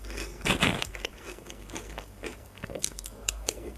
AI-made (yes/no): yes